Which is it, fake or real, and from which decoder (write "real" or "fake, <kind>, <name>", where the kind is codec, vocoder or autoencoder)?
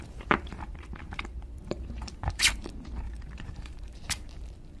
fake, vocoder, BigVGAN v2